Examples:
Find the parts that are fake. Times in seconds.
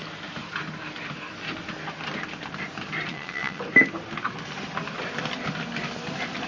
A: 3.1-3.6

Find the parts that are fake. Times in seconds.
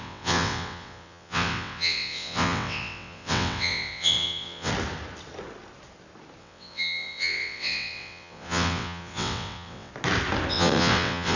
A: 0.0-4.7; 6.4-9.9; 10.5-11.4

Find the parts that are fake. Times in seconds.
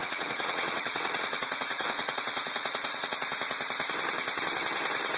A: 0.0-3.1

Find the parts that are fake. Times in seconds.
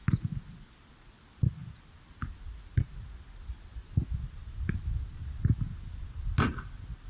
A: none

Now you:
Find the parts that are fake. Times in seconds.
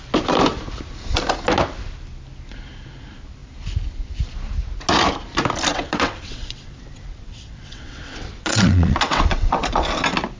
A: 5.7-9.6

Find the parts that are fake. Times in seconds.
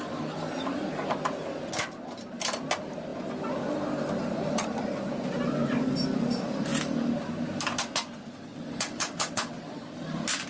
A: 8.5-9.8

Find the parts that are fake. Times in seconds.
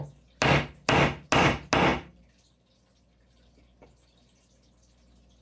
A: none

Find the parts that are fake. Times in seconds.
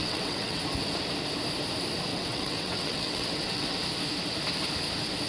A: 0.0-0.6; 2.1-3.8